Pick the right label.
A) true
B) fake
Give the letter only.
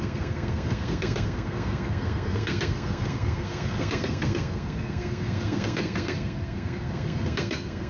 B